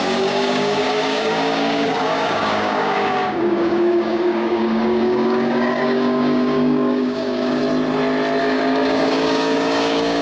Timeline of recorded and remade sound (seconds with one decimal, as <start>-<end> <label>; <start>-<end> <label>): 0.0-7.6 remade; 7.6-8.4 recorded; 8.4-10.2 remade

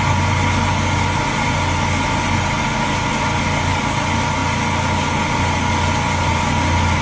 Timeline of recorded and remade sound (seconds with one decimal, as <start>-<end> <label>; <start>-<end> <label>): 0.0-7.0 recorded

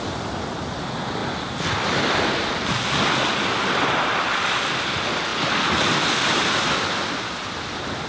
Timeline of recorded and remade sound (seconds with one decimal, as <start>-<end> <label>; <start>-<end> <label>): 0.0-8.1 recorded

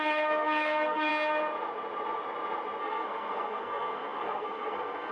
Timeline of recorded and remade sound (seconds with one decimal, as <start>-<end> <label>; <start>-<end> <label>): 0.0-1.1 remade; 1.1-2.8 recorded; 2.8-5.1 remade

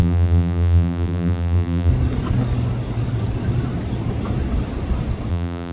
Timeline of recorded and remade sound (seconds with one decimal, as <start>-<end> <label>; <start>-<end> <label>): 0.0-1.9 remade; 1.9-5.3 recorded; 5.3-5.7 remade

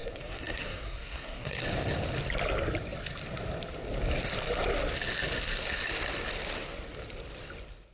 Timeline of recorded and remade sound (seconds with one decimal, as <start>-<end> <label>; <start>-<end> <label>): 0.0-1.6 remade; 1.6-7.9 recorded

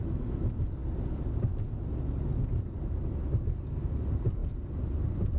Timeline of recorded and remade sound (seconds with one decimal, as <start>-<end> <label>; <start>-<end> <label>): 0.0-4.4 recorded; 4.4-5.4 remade